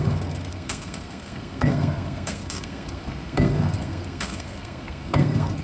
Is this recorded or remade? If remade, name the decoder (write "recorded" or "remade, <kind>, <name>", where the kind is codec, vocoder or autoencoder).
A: remade, codec, SNAC